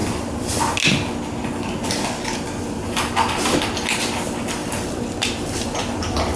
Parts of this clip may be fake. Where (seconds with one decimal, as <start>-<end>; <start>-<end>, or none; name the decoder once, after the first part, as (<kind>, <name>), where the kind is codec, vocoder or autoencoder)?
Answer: 0.0-0.6 (vocoder, BigVGAN v2); 4.6-6.4